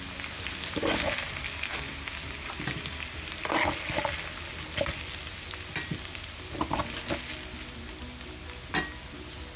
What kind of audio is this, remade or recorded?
recorded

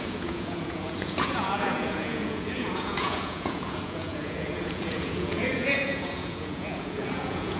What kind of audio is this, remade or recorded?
remade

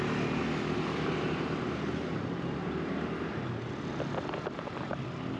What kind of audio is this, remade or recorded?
recorded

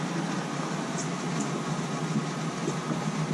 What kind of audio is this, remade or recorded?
recorded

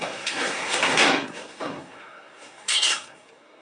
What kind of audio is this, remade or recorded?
remade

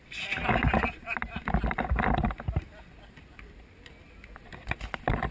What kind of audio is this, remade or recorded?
recorded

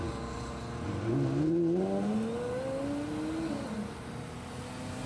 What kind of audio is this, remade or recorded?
recorded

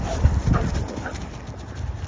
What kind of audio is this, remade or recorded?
recorded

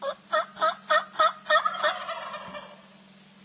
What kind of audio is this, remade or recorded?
recorded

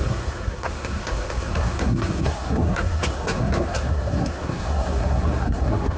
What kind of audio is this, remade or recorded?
remade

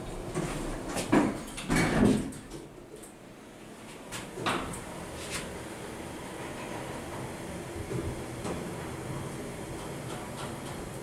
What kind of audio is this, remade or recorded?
remade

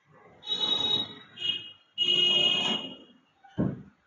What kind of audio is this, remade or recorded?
recorded